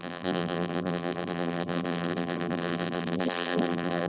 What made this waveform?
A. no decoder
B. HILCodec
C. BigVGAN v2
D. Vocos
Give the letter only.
C